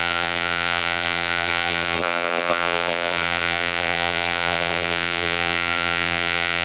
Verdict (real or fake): fake